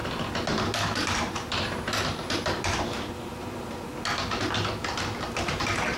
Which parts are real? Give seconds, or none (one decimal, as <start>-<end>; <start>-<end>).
0.0-0.5; 3.9-5.5